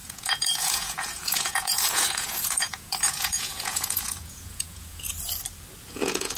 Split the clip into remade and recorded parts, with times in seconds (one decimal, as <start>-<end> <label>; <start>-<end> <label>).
0.0-5.1 remade; 5.1-5.9 recorded; 5.9-6.4 remade